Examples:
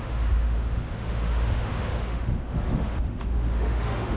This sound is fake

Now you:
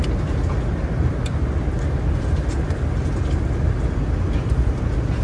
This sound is real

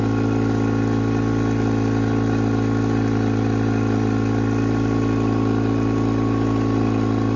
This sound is real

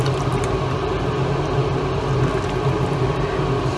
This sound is real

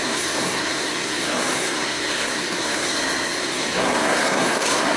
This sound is fake